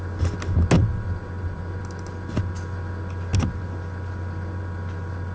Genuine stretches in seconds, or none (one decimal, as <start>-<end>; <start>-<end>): 0.0-5.3

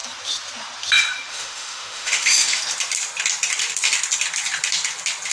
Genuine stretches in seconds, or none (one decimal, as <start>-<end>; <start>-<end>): 0.0-1.3; 2.6-5.3

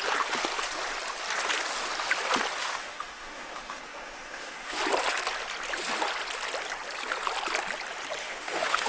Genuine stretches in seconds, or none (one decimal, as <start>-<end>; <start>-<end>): 0.0-2.6; 4.8-8.2

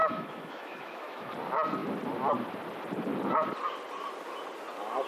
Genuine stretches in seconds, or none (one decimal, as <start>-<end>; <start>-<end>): 1.3-5.1

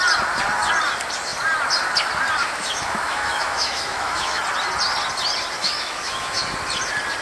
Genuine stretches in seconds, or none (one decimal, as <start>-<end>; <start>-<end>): 0.0-2.4; 4.4-5.6; 6.4-7.2

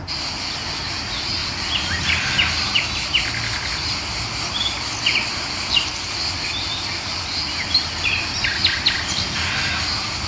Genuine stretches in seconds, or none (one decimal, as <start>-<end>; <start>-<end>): 0.0-10.3